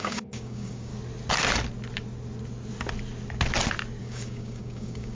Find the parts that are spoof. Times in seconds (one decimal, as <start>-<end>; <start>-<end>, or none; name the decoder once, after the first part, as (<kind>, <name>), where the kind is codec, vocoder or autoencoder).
0.0-0.9 (codec, DAC); 4.0-5.1